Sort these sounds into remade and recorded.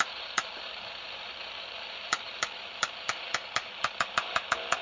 remade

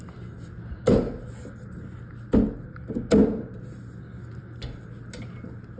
recorded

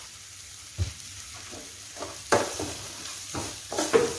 remade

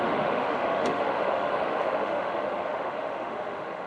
remade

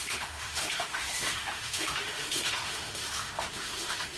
remade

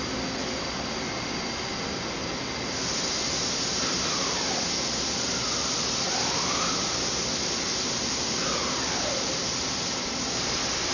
recorded